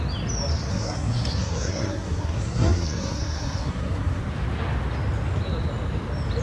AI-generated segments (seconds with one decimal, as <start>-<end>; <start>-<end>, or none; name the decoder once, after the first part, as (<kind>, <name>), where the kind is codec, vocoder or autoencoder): 0.7-4.2 (codec, SNAC)